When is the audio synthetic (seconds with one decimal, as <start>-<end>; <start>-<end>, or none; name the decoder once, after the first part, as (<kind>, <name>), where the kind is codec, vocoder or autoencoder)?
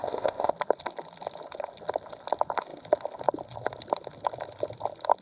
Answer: 0.0-0.5 (codec, ZipCodec)